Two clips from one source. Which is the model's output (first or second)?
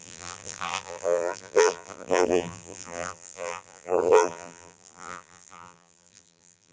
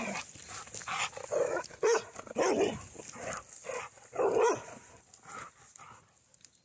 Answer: first